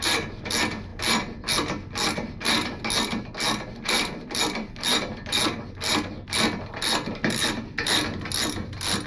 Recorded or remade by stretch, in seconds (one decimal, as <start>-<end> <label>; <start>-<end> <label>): 0.0-9.1 recorded